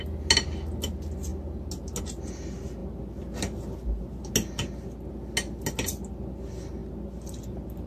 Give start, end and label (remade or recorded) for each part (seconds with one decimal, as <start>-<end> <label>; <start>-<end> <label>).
0.0-7.9 recorded